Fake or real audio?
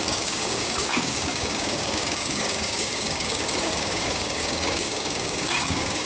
fake